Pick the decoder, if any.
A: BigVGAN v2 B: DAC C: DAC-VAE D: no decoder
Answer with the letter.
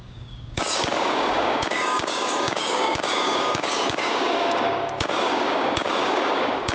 B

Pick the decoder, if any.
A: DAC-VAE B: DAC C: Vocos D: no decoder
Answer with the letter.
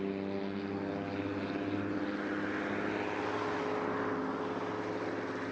D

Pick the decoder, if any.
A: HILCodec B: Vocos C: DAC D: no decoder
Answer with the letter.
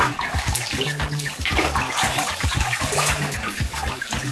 C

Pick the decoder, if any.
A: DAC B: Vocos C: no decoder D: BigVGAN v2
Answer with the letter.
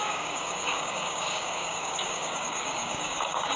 A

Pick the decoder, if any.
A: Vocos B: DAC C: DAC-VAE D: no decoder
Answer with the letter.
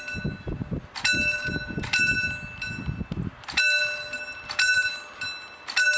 D